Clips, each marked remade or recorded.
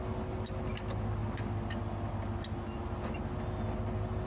recorded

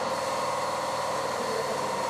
remade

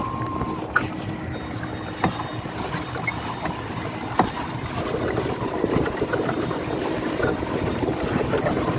remade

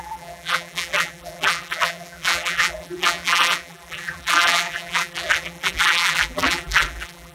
remade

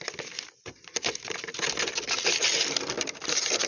recorded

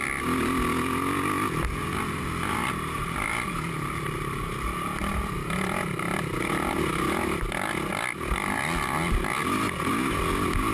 recorded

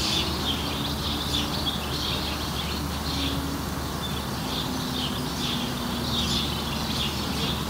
recorded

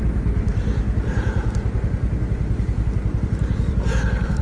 remade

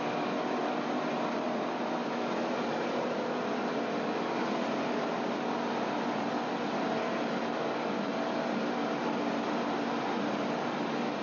remade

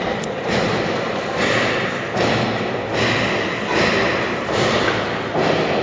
recorded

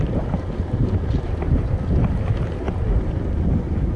recorded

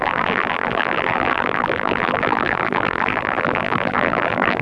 remade